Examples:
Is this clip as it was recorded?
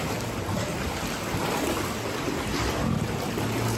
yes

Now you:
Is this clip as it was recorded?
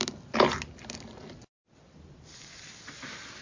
yes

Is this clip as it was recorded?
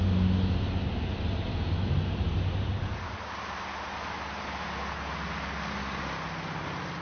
yes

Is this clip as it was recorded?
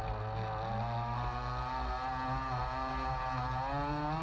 yes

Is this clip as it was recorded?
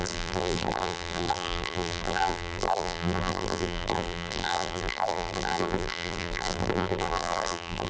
no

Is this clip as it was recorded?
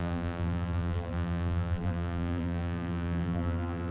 no